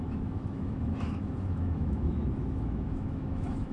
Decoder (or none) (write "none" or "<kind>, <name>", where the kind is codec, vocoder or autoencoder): autoencoder, DAC-VAE